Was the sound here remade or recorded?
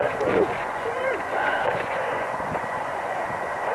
remade